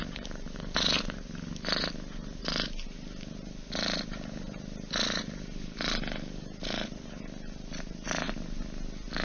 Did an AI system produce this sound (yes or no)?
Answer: no